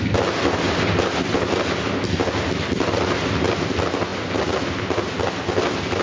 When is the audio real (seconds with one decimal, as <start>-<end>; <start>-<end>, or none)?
0.0-6.0